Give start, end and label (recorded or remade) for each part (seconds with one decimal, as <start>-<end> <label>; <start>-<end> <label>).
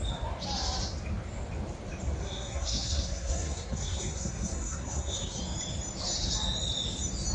0.0-2.2 recorded; 2.2-5.4 remade; 5.4-7.3 recorded